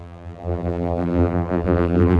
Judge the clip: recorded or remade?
remade